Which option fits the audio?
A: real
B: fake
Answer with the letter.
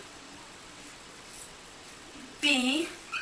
B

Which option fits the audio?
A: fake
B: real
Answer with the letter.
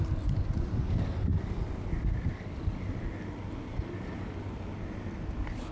B